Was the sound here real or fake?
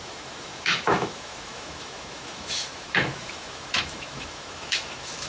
fake